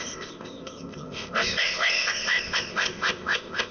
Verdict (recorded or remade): remade